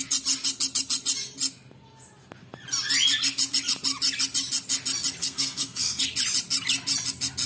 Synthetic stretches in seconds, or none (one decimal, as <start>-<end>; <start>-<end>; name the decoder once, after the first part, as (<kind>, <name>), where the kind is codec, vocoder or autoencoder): 5.2-6.0 (codec, SNAC)